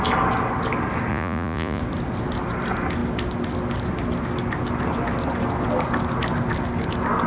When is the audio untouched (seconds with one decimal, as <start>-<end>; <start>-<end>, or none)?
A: 0.0-1.1; 1.8-7.3